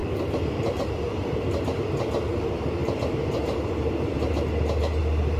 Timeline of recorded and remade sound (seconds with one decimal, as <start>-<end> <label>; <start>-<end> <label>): 0.0-5.4 recorded

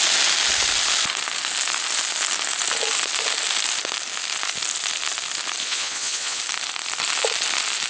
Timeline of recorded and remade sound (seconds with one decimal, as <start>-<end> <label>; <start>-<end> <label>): 0.0-5.6 recorded; 5.6-6.4 remade; 6.4-7.9 recorded

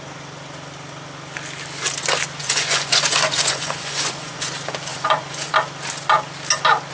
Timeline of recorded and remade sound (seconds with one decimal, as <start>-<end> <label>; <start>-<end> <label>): 0.0-2.4 recorded; 2.4-4.5 remade; 4.5-4.9 recorded; 4.9-5.5 remade; 5.5-6.9 recorded

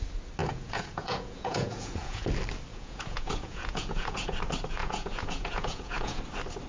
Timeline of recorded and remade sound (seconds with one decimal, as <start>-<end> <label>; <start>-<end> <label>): 0.0-0.4 recorded; 0.4-2.3 remade; 2.3-2.7 recorded; 2.7-4.3 remade; 4.3-4.8 recorded; 4.8-6.2 remade; 6.2-6.7 recorded